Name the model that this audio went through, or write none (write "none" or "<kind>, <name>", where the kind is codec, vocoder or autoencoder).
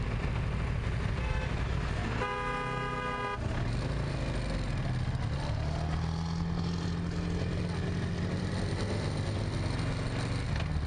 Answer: none